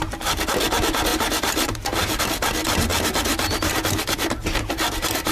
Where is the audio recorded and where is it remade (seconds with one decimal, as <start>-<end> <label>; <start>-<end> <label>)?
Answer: 0.0-1.1 recorded; 1.1-2.2 remade; 2.2-5.3 recorded